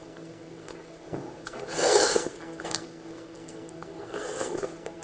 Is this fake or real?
fake